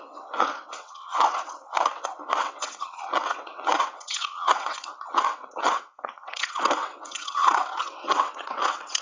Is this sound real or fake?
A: fake